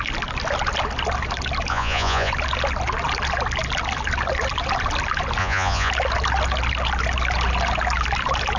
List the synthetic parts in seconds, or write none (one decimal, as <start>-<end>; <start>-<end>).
1.7-2.3; 5.4-5.9